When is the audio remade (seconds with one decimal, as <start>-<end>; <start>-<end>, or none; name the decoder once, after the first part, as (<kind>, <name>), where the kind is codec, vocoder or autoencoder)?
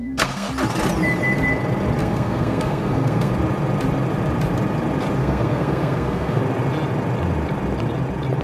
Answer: 0.0-0.5 (codec, SNAC); 2.0-3.3; 5.2-6.4